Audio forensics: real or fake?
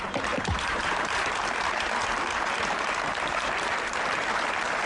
fake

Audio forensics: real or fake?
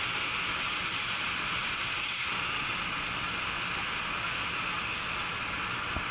real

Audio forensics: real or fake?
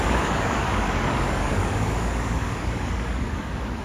fake